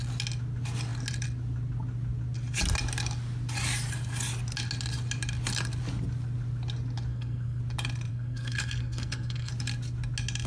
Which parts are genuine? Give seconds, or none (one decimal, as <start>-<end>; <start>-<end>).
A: 0.0-7.1; 7.6-8.1; 9.5-10.5